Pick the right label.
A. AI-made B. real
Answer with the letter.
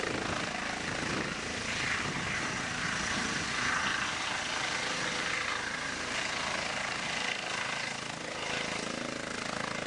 B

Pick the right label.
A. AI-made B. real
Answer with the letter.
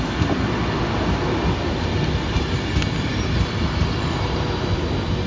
B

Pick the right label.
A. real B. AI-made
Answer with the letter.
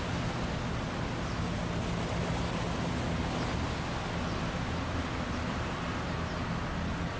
A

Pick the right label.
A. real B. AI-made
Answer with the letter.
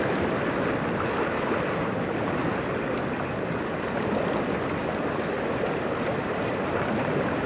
A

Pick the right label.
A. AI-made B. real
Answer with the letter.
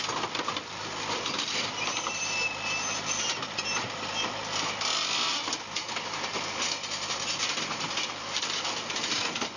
B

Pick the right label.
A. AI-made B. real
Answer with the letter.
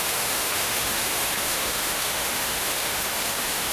A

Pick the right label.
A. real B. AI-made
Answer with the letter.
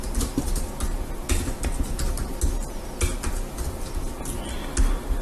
A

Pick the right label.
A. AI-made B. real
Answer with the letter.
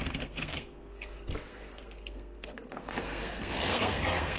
A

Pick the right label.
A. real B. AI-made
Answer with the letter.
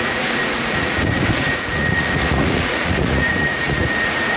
B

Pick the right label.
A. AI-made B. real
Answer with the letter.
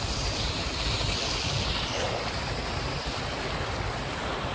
B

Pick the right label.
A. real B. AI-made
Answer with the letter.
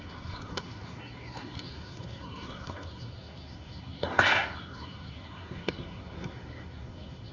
B